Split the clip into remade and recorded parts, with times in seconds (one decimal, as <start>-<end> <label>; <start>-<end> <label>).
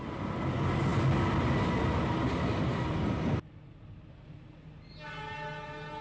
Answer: 0.0-6.0 recorded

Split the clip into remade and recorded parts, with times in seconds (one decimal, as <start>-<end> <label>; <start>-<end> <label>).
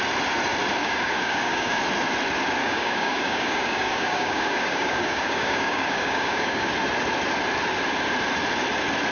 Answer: 0.0-0.8 recorded; 0.8-1.8 remade; 1.8-2.6 recorded; 2.6-6.7 remade; 6.7-9.1 recorded